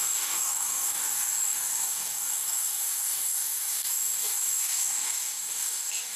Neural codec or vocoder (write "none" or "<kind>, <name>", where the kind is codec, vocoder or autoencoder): codec, DAC